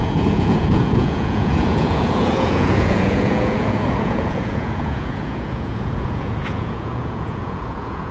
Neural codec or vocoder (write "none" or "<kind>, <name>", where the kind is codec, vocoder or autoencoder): vocoder, Vocos